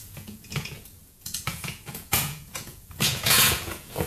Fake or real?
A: fake